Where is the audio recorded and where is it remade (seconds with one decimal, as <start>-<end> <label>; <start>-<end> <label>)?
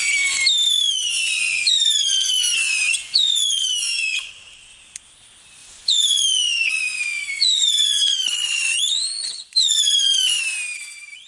0.0-0.9 recorded; 0.9-4.3 remade; 4.3-5.6 recorded; 5.6-10.4 remade; 10.4-11.3 recorded